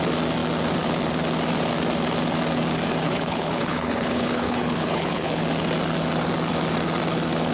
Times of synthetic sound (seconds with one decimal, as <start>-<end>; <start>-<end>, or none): 3.0-5.4